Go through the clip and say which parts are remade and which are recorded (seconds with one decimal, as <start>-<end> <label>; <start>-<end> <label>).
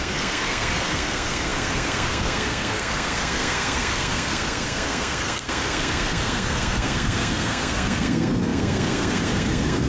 0.0-9.9 remade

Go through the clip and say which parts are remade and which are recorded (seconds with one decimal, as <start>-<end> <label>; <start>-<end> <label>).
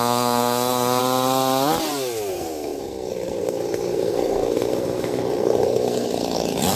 0.0-1.0 remade; 1.0-2.3 recorded; 2.3-6.8 remade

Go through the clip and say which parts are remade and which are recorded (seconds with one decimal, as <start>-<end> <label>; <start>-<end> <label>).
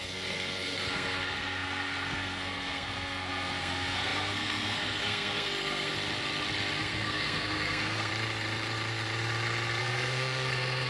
0.0-5.9 remade; 5.9-6.8 recorded; 6.8-8.1 remade; 8.1-9.8 recorded; 9.8-10.9 remade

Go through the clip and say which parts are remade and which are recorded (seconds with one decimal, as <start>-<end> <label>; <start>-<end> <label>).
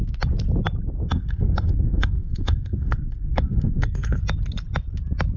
0.0-1.0 recorded; 1.0-4.2 remade; 4.2-5.4 recorded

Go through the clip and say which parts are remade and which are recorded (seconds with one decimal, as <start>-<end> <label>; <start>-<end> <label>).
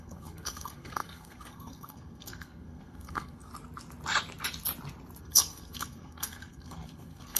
0.0-3.5 remade; 3.5-5.2 recorded; 5.2-7.4 remade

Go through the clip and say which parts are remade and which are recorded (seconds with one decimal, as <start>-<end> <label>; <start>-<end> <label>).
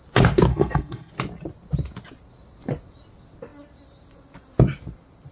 0.0-0.5 recorded; 0.5-1.1 remade; 1.1-5.3 recorded